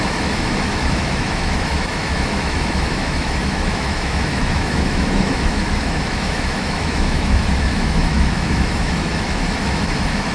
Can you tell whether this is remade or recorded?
remade